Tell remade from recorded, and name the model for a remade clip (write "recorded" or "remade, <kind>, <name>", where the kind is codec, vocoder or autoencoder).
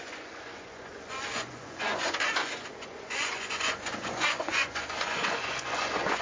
remade, vocoder, Vocos